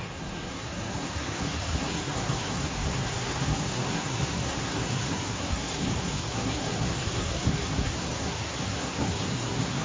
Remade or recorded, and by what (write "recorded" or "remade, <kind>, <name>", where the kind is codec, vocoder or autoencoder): remade, codec, SNAC